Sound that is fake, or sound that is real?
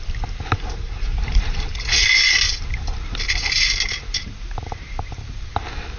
real